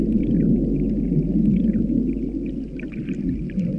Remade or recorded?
recorded